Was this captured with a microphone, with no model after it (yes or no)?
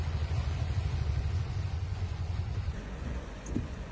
no